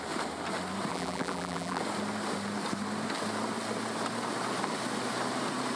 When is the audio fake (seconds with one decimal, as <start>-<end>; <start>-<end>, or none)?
0.9-1.8